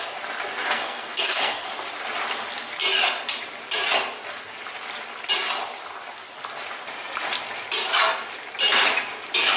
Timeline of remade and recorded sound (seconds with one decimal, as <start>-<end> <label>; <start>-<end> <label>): 0.0-0.6 recorded; 0.6-1.7 remade; 1.7-9.6 recorded